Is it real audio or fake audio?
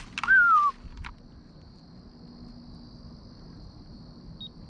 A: real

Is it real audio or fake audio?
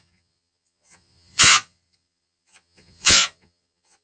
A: fake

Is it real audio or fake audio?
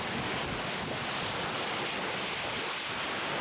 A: real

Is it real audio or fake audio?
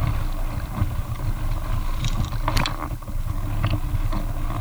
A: real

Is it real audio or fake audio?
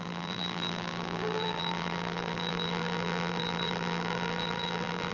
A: fake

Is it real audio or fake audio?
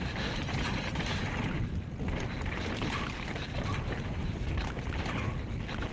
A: fake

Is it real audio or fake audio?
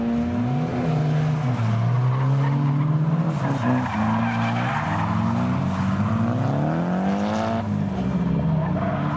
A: real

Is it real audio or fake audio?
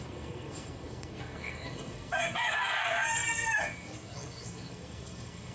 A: fake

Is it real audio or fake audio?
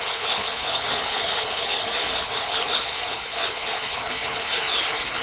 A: fake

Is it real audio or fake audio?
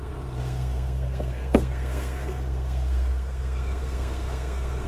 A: fake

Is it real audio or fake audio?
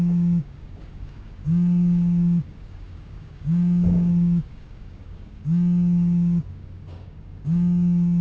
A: fake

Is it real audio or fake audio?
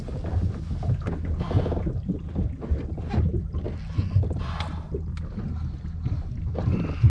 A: real